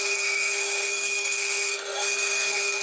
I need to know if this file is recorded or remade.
remade